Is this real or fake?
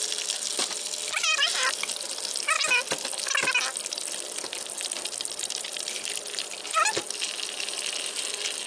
real